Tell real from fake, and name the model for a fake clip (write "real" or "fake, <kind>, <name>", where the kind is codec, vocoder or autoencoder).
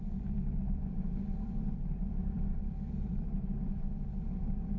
fake, vocoder, BigVGAN v2